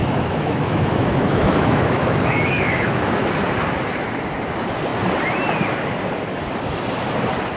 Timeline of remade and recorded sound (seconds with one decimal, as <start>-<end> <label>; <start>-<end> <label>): 0.0-3.3 remade; 3.3-7.6 recorded